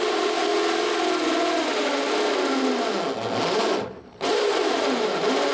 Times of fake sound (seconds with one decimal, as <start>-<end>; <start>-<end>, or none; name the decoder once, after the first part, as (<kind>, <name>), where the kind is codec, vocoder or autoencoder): 0.0-0.5 (vocoder, BigVGAN v2); 3.8-5.5